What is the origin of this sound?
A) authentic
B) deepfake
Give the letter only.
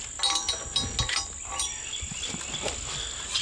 A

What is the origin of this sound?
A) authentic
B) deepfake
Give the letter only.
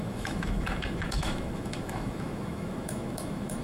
B